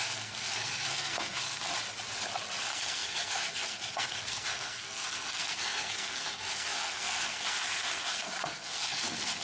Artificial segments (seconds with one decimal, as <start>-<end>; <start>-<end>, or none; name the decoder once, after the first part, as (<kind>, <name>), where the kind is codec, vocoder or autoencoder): 0.0-1.7 (codec, SNAC); 2.6-9.4